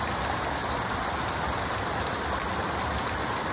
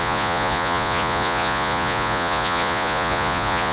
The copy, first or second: second